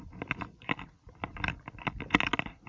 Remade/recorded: recorded